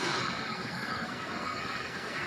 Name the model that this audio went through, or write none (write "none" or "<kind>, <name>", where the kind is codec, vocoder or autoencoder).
codec, SNAC